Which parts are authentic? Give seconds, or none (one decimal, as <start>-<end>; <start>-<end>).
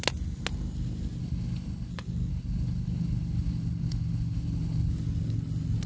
0.0-1.2; 1.9-2.3; 4.9-5.9